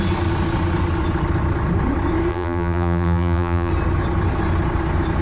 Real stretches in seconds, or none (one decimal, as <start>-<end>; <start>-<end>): 0.0-2.3; 3.7-5.2